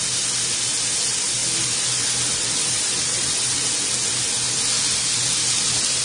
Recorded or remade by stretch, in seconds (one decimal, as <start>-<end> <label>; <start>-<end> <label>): 0.0-6.0 recorded